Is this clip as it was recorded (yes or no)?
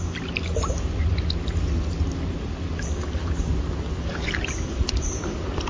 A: yes